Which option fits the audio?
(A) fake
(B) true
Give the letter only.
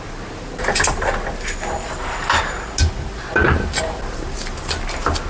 B